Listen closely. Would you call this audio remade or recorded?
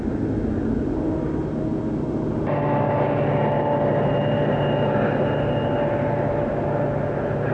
recorded